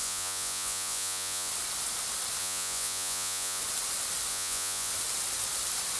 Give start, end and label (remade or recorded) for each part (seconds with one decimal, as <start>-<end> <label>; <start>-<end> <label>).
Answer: 0.0-1.5 remade; 1.5-2.4 recorded; 2.4-3.6 remade; 3.6-4.3 recorded; 4.3-4.9 remade; 4.9-6.0 recorded